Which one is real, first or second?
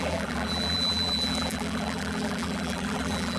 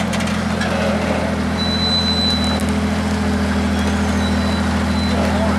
second